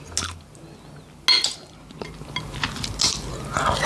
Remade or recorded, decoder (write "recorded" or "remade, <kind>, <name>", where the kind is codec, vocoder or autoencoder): recorded